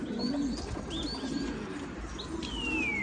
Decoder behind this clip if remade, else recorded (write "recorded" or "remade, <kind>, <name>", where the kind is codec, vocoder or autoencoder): recorded